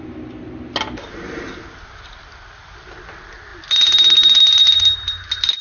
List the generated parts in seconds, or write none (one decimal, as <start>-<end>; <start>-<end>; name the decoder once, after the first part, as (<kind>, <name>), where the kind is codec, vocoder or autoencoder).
none